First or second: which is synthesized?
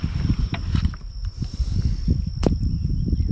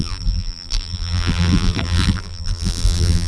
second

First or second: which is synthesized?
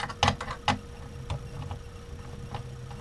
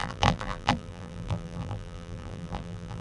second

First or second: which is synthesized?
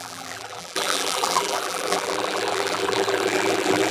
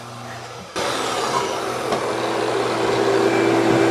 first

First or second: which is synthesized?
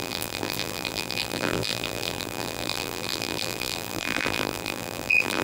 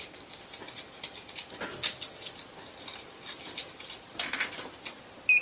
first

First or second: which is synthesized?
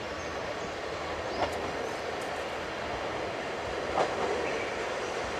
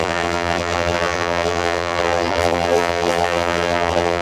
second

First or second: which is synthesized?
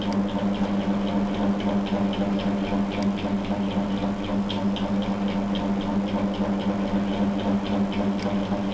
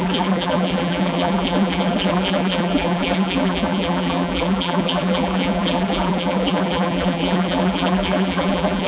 second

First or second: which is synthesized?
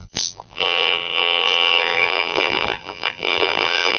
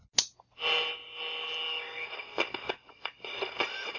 first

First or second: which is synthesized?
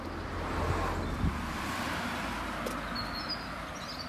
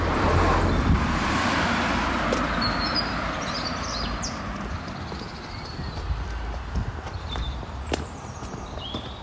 second